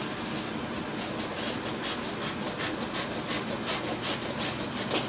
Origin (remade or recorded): recorded